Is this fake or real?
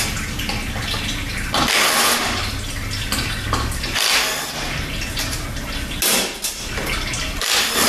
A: real